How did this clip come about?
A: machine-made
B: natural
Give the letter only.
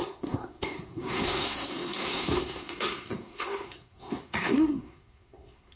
A